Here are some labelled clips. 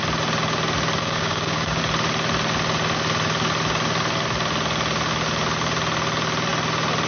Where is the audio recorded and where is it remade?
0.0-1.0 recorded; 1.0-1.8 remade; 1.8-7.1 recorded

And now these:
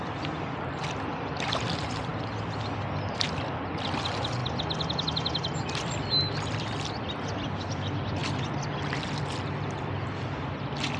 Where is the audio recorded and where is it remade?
0.0-2.1 remade; 2.1-3.0 recorded; 3.0-4.4 remade; 4.4-5.6 recorded; 5.6-8.2 remade; 8.2-9.0 recorded; 9.0-11.0 remade

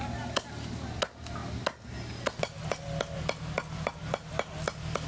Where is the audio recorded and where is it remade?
0.0-5.1 recorded

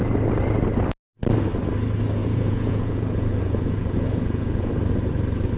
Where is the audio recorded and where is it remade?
0.0-2.2 recorded; 2.2-4.7 remade; 4.7-5.6 recorded

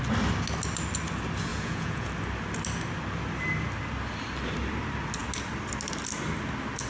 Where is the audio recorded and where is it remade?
0.0-1.5 recorded; 1.5-2.1 remade; 2.1-6.9 recorded

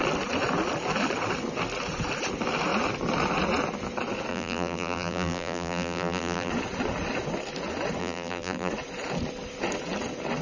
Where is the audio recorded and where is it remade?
0.0-4.3 recorded; 4.3-6.5 remade; 6.5-8.0 recorded; 8.0-8.7 remade; 8.7-10.4 recorded